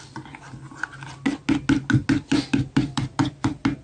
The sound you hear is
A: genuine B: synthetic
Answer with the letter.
A